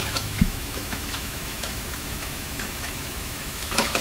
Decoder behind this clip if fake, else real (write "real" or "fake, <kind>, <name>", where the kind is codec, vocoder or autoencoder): fake, autoencoder, DAC-VAE